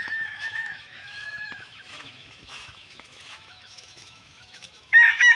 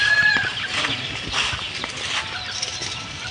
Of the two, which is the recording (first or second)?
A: second